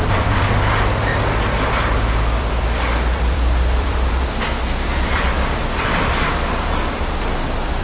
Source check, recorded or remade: remade